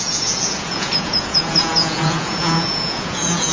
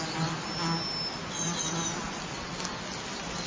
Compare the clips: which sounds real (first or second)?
second